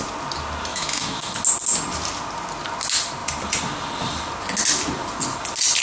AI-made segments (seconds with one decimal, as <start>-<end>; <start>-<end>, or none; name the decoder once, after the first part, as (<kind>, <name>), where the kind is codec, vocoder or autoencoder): 0.7-1.4 (autoencoder, DAC-VAE)

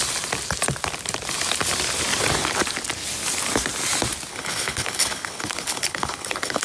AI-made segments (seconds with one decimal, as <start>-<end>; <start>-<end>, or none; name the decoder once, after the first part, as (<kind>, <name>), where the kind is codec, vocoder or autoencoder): 4.3-6.6 (codec, HILCodec)

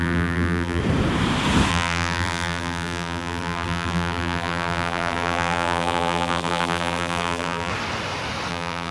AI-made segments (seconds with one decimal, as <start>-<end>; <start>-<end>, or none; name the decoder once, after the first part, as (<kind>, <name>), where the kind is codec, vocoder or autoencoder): 0.0-0.8 (vocoder, BigVGAN v2); 1.7-7.7; 8.5-8.9

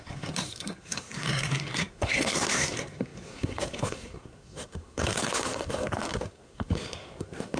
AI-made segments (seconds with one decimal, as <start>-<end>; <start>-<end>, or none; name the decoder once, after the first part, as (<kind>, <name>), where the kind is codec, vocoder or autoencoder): 0.0-7.6 (codec, SNAC)

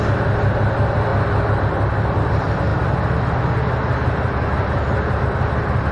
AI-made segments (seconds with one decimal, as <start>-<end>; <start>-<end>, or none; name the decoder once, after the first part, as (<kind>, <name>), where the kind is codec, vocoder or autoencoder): 0.0-1.1 (vocoder, BigVGAN v2); 1.6-2.7; 5.2-5.9

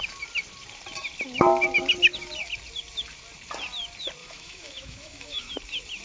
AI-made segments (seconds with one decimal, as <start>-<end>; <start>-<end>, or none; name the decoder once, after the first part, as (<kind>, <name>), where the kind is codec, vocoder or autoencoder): 4.2-5.5 (autoencoder, DAC-VAE)

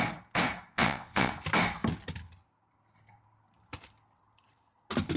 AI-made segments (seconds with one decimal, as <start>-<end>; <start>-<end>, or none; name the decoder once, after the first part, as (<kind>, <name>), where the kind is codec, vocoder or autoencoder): 0.7-1.3 (vocoder, WaveNeXt)